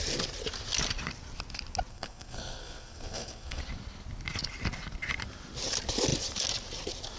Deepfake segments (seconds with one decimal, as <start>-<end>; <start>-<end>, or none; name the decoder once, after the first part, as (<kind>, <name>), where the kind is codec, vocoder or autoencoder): 1.9-3.6 (codec, SNAC)